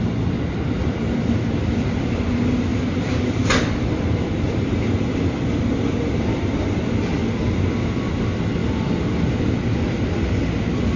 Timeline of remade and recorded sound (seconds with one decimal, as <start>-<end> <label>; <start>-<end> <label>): 0.0-11.0 recorded